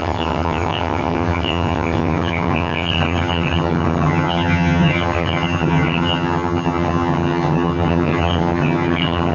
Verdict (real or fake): fake